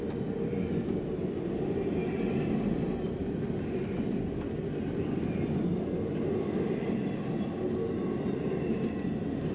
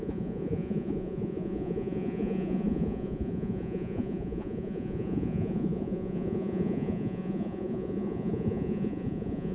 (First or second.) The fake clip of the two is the second